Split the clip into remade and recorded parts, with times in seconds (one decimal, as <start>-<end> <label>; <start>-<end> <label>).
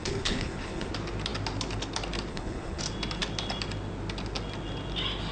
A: 0.0-0.9 remade; 0.9-2.3 recorded; 2.3-2.8 remade; 2.8-5.3 recorded